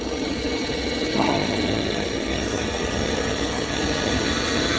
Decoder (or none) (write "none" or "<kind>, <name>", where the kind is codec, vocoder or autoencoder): vocoder, HiFi-GAN